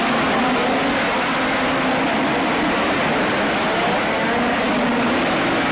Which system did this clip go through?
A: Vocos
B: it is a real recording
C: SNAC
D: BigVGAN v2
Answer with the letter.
B